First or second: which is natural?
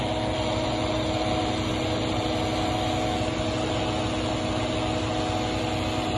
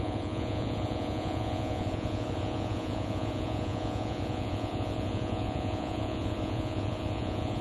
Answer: first